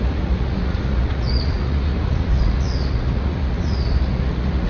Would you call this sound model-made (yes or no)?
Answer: yes